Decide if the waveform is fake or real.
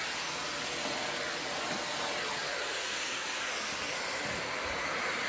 real